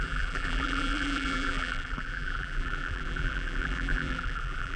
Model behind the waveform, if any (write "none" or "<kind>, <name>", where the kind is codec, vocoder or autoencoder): vocoder, BigVGAN v2